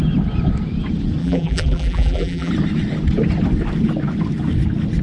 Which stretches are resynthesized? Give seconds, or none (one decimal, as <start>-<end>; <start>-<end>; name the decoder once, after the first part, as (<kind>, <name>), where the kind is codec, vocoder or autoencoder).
1.2-2.5 (vocoder, BigVGAN v2)